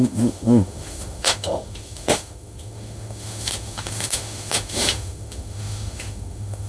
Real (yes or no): no